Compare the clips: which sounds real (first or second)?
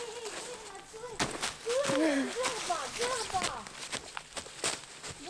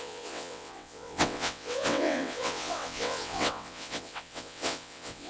first